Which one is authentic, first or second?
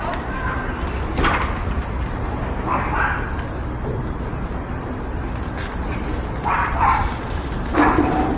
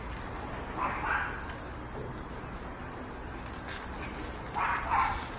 second